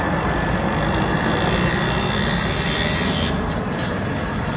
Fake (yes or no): no